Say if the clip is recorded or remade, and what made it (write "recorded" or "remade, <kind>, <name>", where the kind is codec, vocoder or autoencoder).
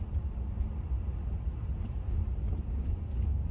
recorded